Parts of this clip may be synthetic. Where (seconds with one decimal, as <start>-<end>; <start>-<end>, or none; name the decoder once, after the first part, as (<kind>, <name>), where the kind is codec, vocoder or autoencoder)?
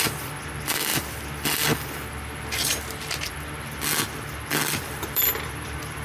0.0-0.9 (vocoder, BigVGAN v2); 4.5-6.0